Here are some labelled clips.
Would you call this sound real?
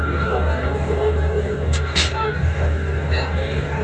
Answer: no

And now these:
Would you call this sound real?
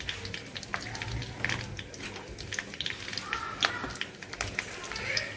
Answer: yes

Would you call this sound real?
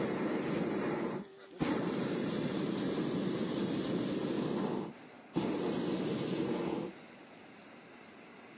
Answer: yes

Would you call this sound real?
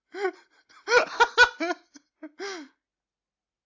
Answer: yes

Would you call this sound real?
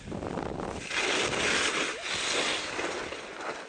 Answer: yes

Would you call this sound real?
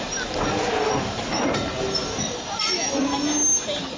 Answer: yes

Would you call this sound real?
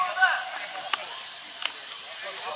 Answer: yes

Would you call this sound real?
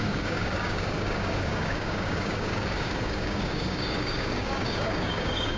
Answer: no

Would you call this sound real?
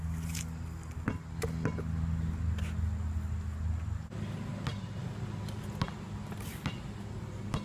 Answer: yes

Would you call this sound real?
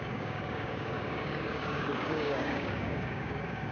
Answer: no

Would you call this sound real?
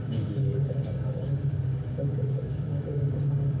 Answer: no